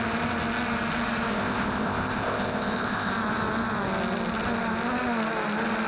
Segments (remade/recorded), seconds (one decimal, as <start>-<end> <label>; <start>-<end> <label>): 0.0-1.3 recorded; 1.3-3.1 remade; 3.1-5.9 recorded

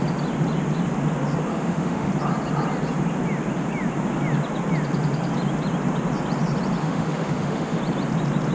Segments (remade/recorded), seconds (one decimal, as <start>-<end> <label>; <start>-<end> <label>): 0.0-1.5 recorded; 1.5-2.1 remade; 2.1-6.8 recorded; 6.8-7.8 remade; 7.8-8.5 recorded